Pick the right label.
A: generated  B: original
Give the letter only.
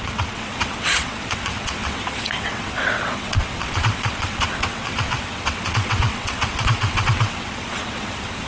A